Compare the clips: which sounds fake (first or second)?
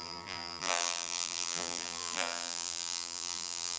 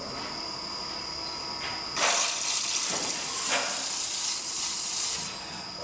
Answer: first